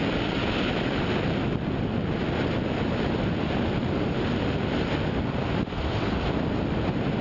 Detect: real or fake real